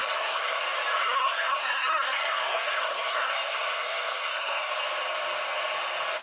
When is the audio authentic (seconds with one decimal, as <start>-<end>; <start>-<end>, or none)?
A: 0.6-1.0; 4.7-6.2